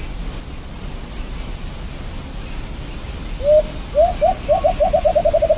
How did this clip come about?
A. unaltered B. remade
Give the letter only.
A